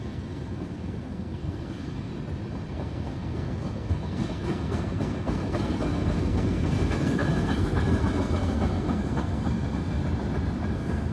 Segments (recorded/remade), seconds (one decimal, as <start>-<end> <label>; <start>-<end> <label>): 0.0-2.1 remade; 2.1-2.7 recorded; 2.7-10.0 remade; 10.0-10.7 recorded; 10.7-11.1 remade